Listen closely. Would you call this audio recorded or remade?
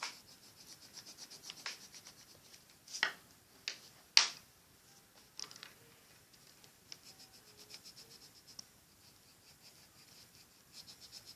recorded